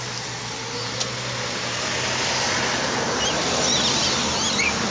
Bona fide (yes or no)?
yes